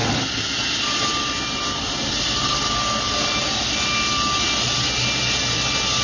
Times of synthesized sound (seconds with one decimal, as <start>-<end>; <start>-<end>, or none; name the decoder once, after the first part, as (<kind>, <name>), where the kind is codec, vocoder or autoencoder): none